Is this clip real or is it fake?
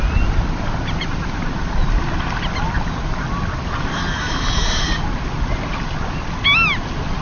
real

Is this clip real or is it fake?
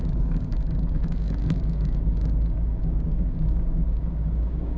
fake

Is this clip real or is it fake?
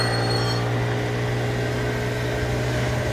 real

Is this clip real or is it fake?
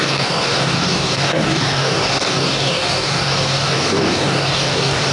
fake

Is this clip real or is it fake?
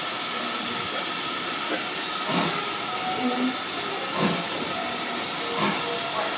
real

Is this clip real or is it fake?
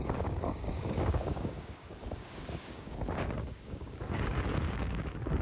fake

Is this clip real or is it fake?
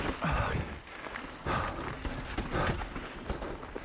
real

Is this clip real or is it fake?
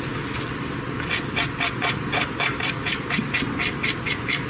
real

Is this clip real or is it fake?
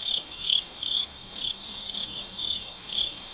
fake